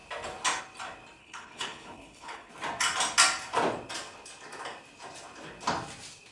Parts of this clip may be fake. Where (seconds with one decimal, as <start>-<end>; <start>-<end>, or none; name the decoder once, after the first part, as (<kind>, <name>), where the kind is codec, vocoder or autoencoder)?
1.2-2.5 (codec, HILCodec)